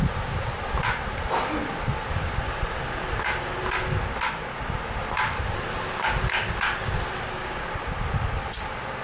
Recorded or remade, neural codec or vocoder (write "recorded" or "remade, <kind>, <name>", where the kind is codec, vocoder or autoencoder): recorded